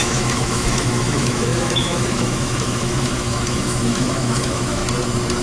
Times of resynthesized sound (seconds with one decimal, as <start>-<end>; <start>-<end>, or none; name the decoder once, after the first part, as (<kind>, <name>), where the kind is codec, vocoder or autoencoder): 0.0-4.8 (autoencoder, DAC-VAE)